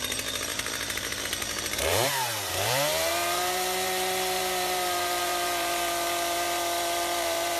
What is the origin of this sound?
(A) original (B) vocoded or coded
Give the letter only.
B